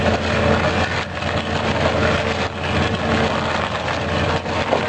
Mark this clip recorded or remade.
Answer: recorded